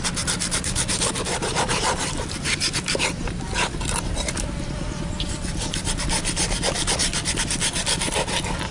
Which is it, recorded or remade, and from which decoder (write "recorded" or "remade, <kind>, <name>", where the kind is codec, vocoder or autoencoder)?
recorded